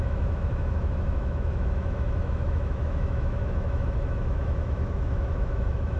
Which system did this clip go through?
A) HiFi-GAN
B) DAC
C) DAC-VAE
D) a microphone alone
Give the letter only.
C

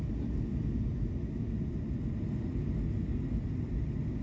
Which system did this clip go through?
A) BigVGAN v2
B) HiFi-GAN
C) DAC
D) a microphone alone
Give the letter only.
D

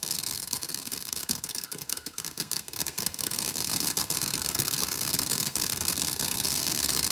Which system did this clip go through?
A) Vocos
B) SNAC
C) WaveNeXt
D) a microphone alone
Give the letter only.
B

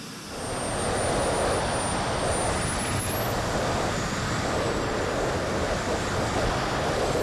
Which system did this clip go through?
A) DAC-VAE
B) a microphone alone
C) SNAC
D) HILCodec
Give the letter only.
B